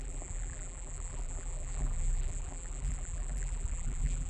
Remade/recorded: remade